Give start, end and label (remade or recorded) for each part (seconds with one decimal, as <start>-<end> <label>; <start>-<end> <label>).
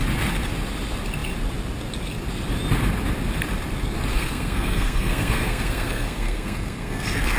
0.0-4.1 recorded; 4.1-7.4 remade